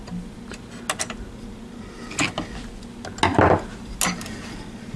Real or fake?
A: real